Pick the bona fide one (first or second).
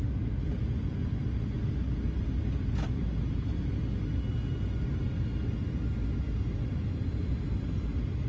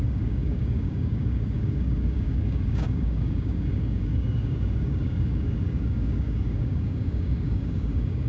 first